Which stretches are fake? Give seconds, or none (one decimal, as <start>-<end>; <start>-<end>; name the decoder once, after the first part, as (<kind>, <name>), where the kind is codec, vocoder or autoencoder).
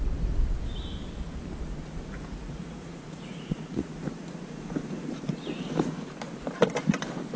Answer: 1.8-6.1 (vocoder, Vocos)